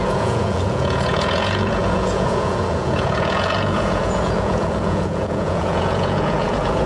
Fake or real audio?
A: fake